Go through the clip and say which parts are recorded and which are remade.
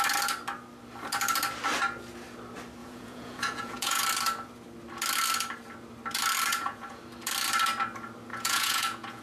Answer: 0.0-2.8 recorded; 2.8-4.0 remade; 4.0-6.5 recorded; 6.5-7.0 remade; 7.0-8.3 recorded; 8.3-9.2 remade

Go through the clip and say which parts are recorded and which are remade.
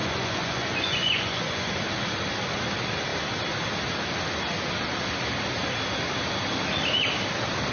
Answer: 0.0-1.7 remade; 1.7-7.7 recorded